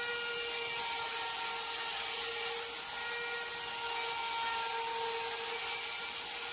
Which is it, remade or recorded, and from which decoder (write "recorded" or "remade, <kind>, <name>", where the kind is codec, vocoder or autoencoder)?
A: recorded